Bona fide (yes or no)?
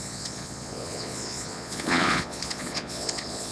no